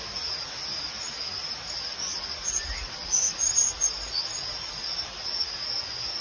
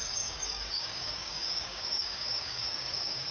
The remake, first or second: second